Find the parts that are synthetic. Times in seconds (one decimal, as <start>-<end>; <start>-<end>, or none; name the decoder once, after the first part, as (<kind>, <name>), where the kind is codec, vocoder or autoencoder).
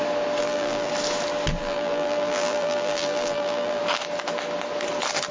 0.4-0.9 (vocoder, BigVGAN v2); 1.6-3.8